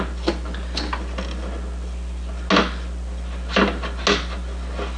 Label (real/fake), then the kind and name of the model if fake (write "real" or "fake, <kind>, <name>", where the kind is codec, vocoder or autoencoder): real